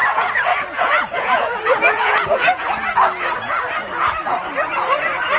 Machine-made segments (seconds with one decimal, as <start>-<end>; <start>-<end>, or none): 0.0-2.6